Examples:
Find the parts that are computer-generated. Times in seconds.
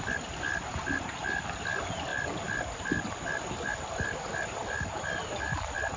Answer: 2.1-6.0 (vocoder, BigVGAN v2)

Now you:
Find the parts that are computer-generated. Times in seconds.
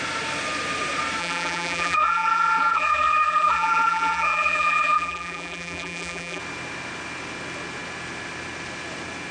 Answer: 1.2-6.4 (vocoder, BigVGAN v2)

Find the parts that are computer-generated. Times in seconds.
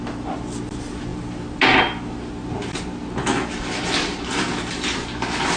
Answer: none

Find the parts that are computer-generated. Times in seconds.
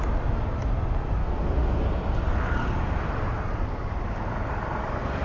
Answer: 1.2-1.8 (autoencoder, DAC-VAE)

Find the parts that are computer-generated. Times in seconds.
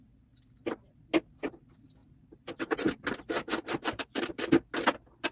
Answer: 2.0-4.4 (vocoder, BigVGAN v2)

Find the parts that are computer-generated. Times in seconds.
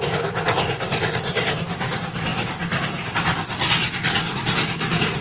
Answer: none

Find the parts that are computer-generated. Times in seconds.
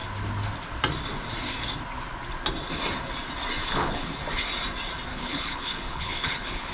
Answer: 3.6-4.2 (codec, HILCodec); 5.1-6.7